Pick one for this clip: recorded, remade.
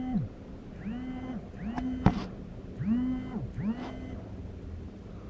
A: recorded